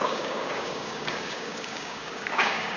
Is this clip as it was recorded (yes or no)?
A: no